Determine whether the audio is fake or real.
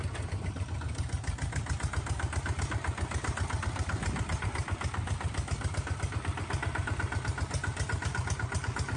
real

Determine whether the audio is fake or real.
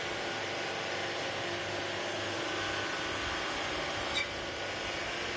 real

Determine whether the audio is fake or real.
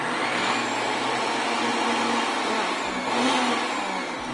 real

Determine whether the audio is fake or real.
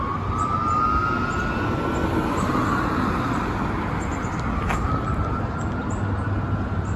real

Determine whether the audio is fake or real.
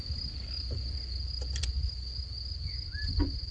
real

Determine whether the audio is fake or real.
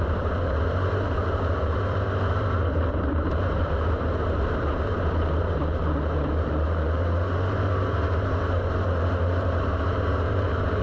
fake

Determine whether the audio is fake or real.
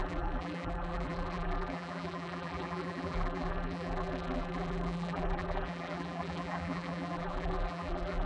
fake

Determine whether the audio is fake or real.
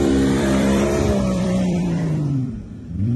fake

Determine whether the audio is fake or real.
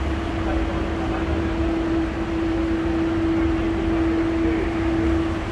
real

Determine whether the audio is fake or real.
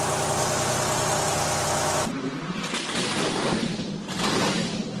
real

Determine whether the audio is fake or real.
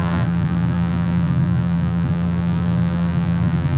fake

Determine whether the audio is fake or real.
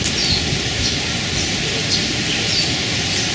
real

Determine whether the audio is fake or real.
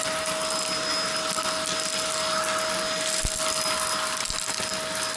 real